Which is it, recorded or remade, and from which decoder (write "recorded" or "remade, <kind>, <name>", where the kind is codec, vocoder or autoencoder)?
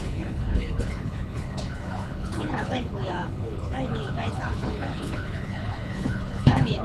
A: remade, codec, HILCodec